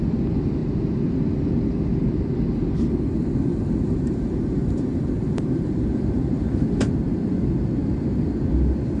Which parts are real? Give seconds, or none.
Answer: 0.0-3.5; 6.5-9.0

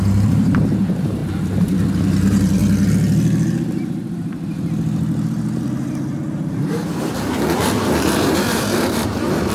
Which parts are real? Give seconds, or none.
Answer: 1.2-1.9; 2.6-3.6

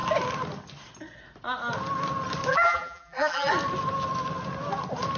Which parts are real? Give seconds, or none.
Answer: 0.0-2.5; 3.5-5.2

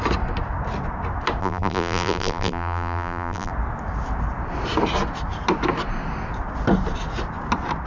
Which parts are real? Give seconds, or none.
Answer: 0.0-1.4; 3.5-7.9

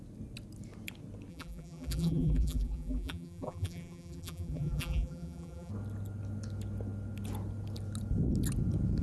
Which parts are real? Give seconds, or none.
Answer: 0.0-1.3; 5.7-9.0

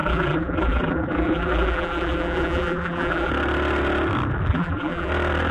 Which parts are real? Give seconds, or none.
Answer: 3.3-4.5; 5.1-5.5